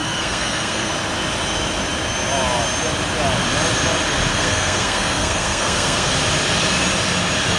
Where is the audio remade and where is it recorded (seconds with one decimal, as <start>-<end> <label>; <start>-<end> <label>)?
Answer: 0.0-0.9 remade; 0.9-4.3 recorded; 4.3-6.1 remade; 6.1-7.6 recorded